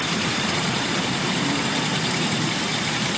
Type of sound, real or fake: fake